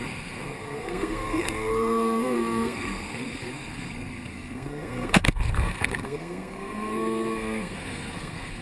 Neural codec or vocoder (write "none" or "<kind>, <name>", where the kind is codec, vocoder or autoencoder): codec, SNAC